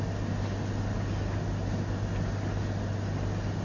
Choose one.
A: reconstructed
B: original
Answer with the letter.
B